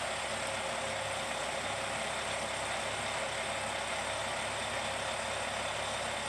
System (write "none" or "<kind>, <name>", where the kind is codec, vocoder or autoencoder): none